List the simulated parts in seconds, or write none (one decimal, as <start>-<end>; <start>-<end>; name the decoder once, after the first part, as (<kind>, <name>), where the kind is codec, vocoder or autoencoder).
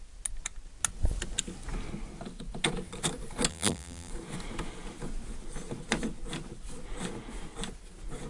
3.5-4.1 (vocoder, BigVGAN v2)